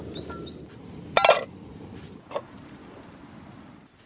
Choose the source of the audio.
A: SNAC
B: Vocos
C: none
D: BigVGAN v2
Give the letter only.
C